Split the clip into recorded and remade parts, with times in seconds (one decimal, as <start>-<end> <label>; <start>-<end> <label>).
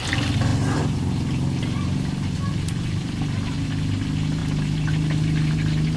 0.0-6.0 recorded